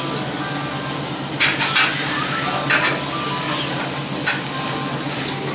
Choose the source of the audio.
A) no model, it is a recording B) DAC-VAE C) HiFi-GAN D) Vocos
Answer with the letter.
A